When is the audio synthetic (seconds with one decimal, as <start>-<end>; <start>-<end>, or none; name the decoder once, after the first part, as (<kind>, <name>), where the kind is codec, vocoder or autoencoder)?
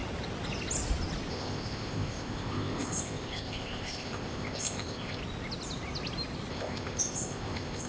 1.3-5.2 (codec, ZipCodec); 6.5-7.9